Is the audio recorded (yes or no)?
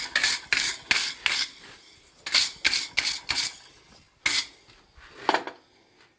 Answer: yes